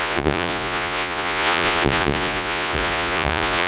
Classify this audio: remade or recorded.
remade